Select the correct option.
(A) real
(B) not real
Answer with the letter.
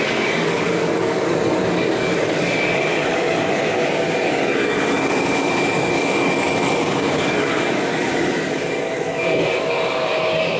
B